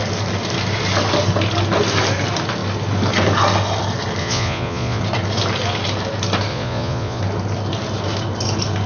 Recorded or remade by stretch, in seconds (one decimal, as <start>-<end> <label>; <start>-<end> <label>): 0.0-4.2 recorded; 4.2-5.0 remade; 5.0-6.5 recorded; 6.5-7.2 remade; 7.2-8.9 recorded

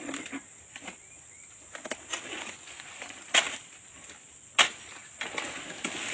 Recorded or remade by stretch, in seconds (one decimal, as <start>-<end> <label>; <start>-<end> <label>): 0.0-2.3 recorded; 2.3-3.2 remade; 3.2-6.1 recorded

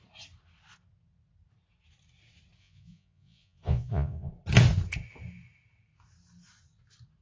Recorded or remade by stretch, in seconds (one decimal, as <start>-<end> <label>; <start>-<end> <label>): 0.0-2.6 recorded; 2.6-4.3 remade; 4.3-7.2 recorded

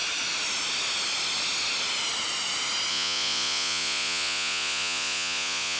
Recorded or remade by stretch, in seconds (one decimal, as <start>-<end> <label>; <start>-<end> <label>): 0.0-2.9 recorded; 2.9-5.8 remade